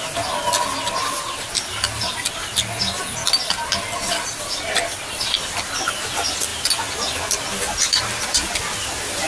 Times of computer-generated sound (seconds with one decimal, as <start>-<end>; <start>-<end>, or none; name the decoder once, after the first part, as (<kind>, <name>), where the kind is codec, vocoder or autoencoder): none

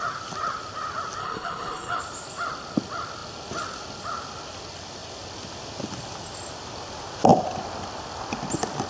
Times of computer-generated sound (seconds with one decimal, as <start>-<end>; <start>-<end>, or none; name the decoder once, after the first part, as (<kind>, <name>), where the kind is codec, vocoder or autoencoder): 1.2-2.0 (codec, HILCodec)

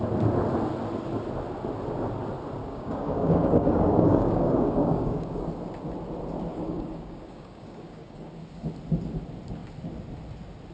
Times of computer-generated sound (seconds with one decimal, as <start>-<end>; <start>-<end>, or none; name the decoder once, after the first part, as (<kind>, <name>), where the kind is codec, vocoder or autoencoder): 2.6-5.5 (codec, DAC); 6.5-8.3

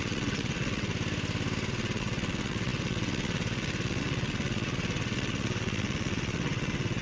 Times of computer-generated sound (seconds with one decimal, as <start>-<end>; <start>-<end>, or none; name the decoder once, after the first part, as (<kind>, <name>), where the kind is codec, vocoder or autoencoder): 0.0-0.9 (vocoder, WaveNeXt); 1.7-7.0

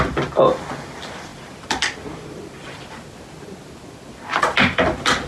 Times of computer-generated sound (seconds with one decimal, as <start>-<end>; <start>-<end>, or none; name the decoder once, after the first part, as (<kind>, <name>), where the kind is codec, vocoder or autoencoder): none